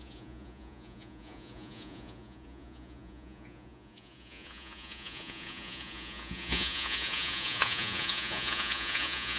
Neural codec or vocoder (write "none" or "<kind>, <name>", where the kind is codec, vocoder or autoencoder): vocoder, Vocos